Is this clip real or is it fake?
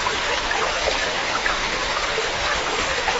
fake